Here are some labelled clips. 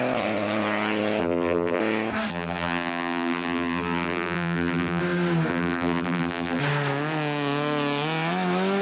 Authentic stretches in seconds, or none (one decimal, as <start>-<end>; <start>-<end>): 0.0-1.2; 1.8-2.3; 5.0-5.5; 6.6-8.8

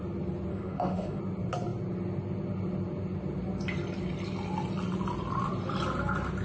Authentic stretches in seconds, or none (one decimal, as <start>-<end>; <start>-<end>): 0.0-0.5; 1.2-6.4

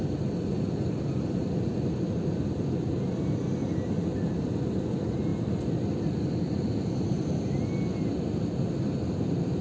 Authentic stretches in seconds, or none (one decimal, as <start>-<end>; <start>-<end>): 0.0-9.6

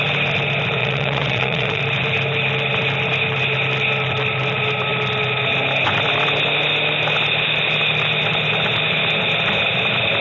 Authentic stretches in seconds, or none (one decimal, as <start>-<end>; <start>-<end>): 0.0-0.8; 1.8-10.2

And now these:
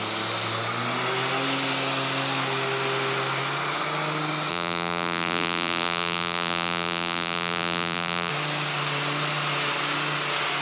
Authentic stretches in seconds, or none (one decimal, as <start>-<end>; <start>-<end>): 0.0-4.5; 8.3-10.6